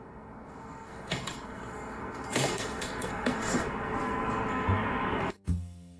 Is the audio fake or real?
fake